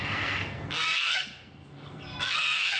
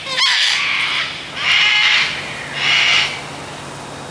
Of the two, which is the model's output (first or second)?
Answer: first